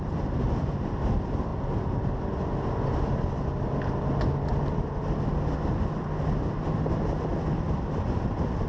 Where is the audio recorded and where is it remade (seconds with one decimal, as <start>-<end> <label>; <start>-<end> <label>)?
0.0-8.7 recorded